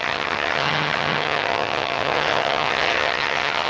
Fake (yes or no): yes